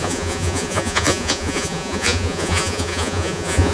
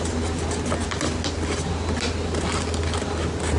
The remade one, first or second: first